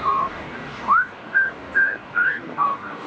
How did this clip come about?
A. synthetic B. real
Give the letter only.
A